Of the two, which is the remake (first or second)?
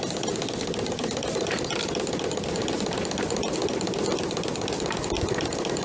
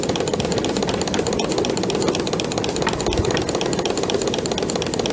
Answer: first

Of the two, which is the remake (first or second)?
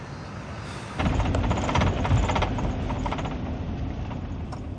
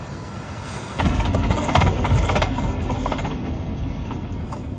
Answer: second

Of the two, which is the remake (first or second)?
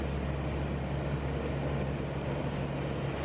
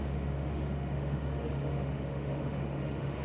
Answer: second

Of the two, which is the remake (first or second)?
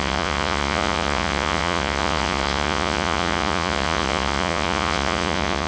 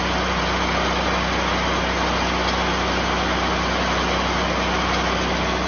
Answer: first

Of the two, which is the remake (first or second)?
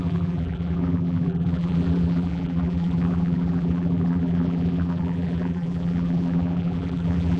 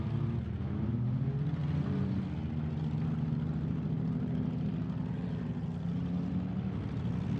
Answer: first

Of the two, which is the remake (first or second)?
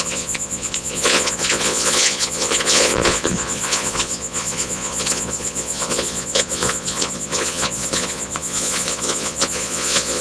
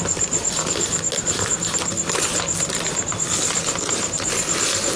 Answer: first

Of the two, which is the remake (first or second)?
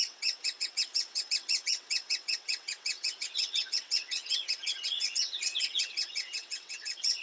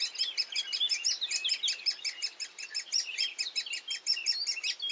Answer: first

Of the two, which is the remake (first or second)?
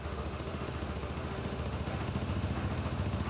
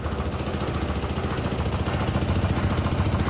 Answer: first